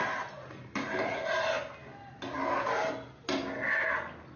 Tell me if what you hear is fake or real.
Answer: real